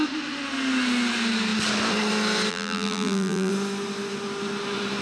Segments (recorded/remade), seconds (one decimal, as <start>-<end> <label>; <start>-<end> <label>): 0.0-2.5 recorded; 2.5-3.5 remade; 3.5-5.0 recorded